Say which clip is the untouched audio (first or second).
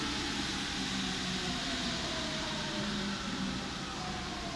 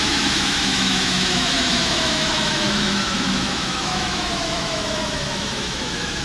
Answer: first